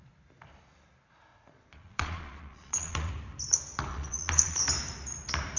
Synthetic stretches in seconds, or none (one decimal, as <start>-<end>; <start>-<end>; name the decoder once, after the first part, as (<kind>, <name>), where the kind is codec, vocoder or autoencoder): 1.3-3.1 (vocoder, Vocos); 3.9-4.6